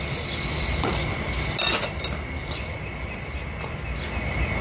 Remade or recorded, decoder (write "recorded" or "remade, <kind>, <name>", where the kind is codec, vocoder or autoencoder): recorded